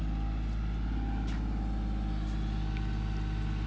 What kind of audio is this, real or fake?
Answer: real